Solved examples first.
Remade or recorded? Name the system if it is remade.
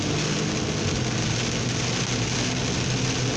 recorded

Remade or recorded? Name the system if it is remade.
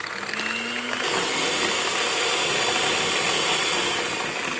recorded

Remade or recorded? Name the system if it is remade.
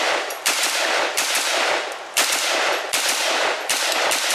remade, vocoder, BigVGAN v2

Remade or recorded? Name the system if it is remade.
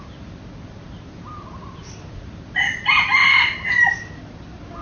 recorded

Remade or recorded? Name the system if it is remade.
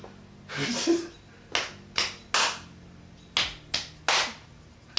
recorded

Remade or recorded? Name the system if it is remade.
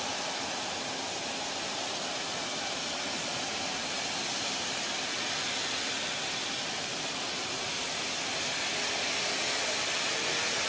remade, vocoder, BigVGAN v2